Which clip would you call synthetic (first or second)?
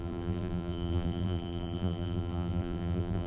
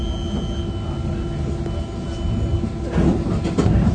first